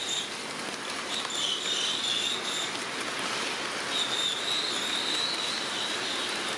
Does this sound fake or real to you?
real